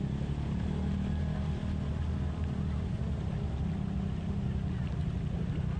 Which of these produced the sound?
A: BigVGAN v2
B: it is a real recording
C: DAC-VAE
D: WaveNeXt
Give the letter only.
B